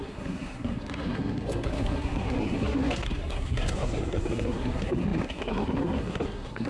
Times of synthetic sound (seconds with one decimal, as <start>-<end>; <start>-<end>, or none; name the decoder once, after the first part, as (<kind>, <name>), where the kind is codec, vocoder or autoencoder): 0.0-6.7 (codec, SNAC)